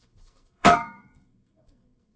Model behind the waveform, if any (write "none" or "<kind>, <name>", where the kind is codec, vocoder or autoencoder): codec, SNAC